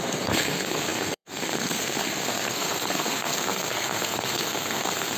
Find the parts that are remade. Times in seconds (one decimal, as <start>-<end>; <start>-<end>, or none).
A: 0.0-5.2